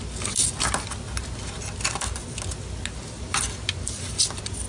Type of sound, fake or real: real